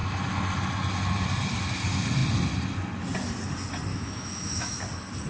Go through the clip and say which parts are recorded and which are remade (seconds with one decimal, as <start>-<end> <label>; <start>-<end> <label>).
0.0-3.9 recorded; 3.9-4.8 remade; 4.8-5.3 recorded